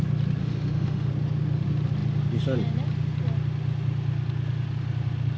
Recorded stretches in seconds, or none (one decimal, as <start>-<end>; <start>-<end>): 0.0-0.4; 1.1-5.4